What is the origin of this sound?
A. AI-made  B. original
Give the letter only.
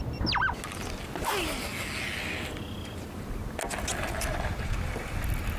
B